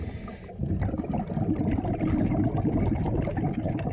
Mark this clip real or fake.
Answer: real